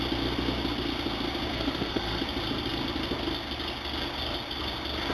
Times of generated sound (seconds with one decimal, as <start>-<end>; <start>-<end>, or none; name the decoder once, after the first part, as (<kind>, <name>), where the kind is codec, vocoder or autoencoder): 1.5-2.2 (codec, SNAC)